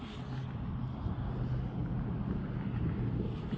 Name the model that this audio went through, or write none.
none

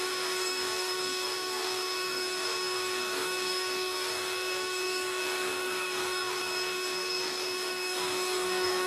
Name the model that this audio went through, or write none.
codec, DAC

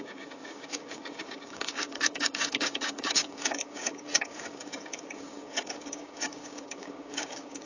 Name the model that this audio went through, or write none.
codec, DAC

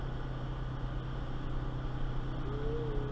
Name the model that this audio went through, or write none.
none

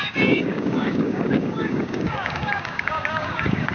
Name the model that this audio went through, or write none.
codec, DAC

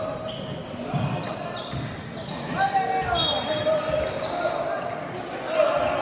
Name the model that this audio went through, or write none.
none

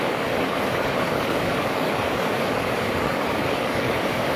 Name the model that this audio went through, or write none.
codec, DAC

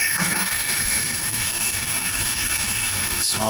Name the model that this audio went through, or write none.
codec, DAC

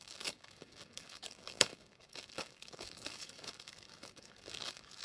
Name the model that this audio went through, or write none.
codec, DAC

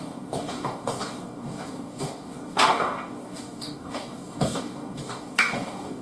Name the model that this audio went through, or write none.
codec, DAC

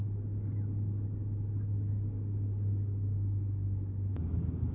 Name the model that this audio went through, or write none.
codec, DAC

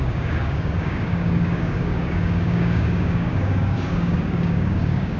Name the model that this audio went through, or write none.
codec, DAC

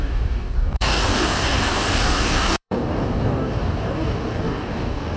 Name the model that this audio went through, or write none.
codec, DAC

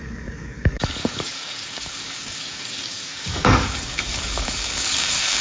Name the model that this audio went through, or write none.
codec, DAC